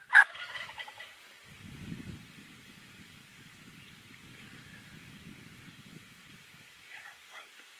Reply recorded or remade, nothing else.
remade